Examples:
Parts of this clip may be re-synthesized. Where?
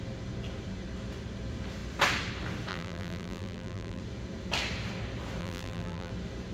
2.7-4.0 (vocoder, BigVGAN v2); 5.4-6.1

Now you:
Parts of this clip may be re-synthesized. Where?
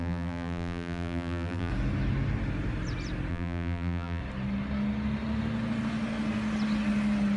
0.0-1.7 (vocoder, BigVGAN v2); 3.3-4.2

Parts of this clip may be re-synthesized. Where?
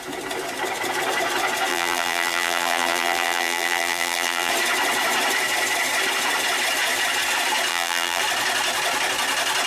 1.7-4.5 (vocoder, BigVGAN v2); 7.7-8.2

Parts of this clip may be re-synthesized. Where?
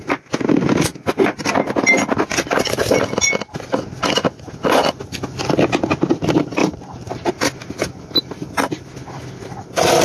6.6-7.4 (vocoder, BigVGAN v2)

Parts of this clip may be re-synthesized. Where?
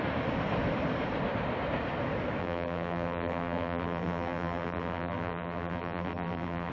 2.4-6.7 (vocoder, BigVGAN v2)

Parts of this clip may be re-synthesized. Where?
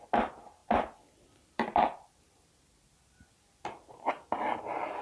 0.6-3.6 (vocoder, BigVGAN v2)